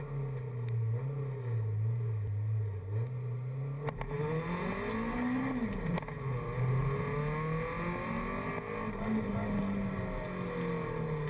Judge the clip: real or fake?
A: real